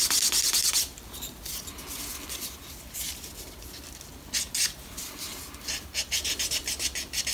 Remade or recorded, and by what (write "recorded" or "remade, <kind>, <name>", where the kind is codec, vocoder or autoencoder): recorded